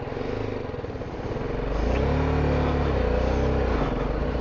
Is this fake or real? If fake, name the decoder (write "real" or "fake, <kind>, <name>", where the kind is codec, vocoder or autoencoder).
real